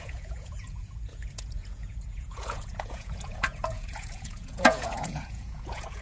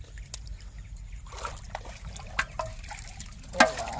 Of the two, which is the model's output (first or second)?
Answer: first